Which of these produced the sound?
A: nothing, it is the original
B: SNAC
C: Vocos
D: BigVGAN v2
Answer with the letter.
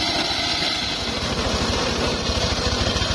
A